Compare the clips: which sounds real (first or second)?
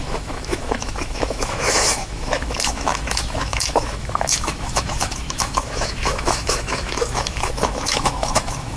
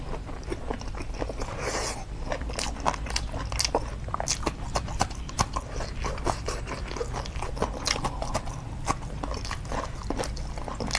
second